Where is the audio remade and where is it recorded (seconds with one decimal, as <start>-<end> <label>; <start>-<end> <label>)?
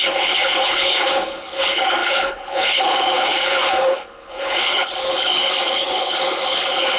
0.0-7.0 remade